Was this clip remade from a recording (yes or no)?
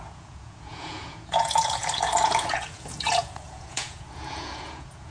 yes